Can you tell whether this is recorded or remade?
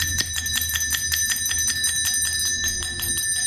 recorded